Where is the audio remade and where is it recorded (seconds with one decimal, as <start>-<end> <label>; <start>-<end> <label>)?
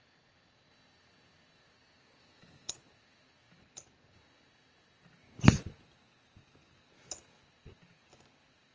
0.0-2.2 recorded; 2.2-2.7 remade; 2.7-8.7 recorded